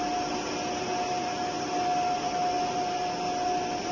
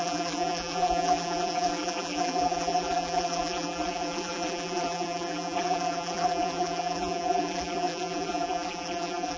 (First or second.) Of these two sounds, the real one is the first